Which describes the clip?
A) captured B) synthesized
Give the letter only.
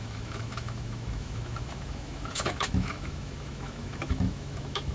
B